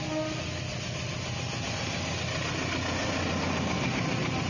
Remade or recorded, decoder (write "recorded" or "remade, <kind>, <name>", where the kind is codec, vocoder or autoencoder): recorded